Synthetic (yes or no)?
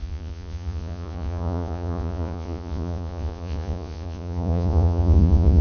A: yes